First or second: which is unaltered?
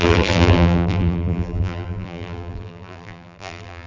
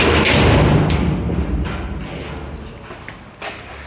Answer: second